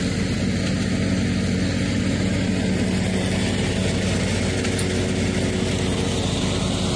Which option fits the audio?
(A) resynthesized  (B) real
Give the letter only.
B